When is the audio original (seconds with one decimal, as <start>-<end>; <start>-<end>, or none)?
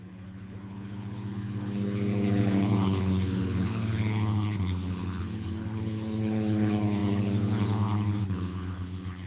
none